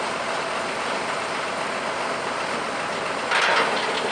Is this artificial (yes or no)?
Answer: no